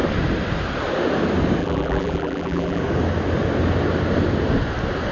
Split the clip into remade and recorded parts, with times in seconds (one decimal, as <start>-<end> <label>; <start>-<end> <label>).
0.0-1.6 recorded; 1.6-2.8 remade; 2.8-5.1 recorded